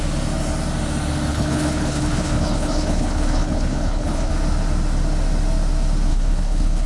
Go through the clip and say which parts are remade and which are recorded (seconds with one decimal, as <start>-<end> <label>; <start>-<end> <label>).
0.0-1.3 recorded; 1.3-4.3 remade; 4.3-6.1 recorded; 6.1-6.9 remade